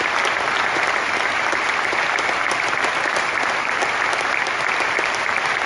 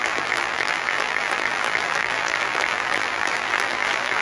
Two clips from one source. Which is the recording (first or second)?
first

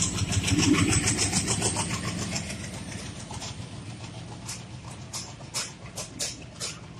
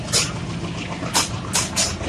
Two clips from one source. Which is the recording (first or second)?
second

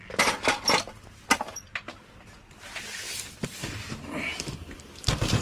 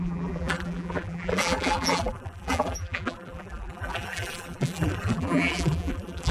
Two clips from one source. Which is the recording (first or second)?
first